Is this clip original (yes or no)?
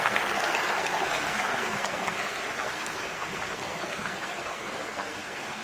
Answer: no